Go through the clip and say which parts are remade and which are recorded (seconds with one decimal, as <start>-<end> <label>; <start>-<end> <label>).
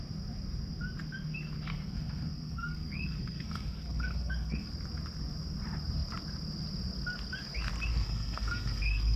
0.0-1.7 recorded; 1.7-4.7 remade; 4.7-7.9 recorded; 7.9-9.2 remade